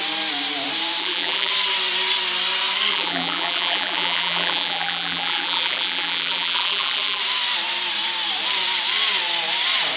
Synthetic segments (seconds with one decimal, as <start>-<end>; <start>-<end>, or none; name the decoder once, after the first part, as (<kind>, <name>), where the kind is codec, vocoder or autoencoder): 1.0-1.5 (vocoder, BigVGAN v2); 2.9-7.2